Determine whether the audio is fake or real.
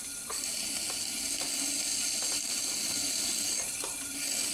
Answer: real